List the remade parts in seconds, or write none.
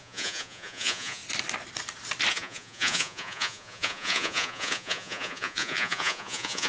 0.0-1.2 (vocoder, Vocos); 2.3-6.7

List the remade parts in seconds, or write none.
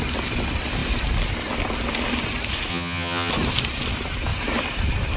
2.7-3.3 (vocoder, HiFi-GAN)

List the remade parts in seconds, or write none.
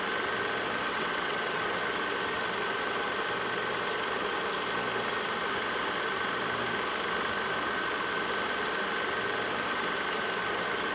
0.9-1.6 (vocoder, WaveNeXt)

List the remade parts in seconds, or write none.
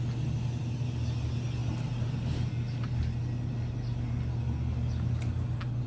none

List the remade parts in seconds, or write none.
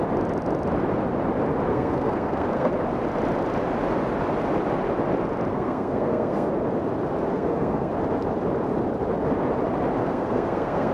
1.7-2.7 (codec, SNAC); 5.5-6.5; 7.3-7.9; 10.0-10.9